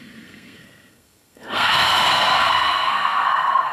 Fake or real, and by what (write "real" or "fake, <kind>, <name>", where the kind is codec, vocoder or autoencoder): fake, codec, SNAC